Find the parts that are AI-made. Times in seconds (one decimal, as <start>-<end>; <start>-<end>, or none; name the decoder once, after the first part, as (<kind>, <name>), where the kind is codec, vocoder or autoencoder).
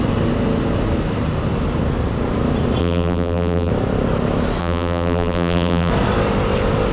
2.8-3.7 (vocoder, BigVGAN v2); 4.6-5.9